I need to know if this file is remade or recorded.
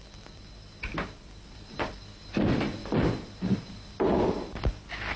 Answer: recorded